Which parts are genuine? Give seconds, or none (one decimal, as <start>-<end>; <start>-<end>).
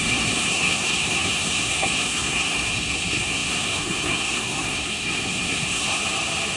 6.0-6.6